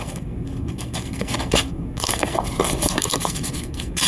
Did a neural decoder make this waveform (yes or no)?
yes